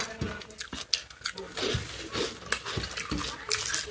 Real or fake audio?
real